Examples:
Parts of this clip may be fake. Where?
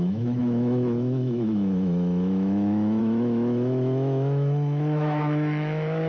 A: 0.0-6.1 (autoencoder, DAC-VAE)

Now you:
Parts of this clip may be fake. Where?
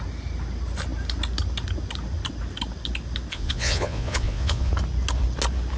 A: 3.3-4.7 (vocoder, Vocos)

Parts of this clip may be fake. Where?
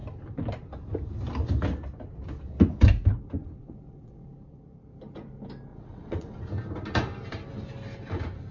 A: 3.4-4.2 (vocoder, WaveNeXt); 5.7-6.4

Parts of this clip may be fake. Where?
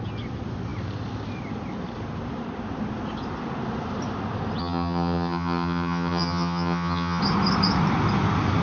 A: 4.6-7.2 (vocoder, HiFi-GAN)